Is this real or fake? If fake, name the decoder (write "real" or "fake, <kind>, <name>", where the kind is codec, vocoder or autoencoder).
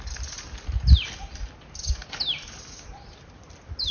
real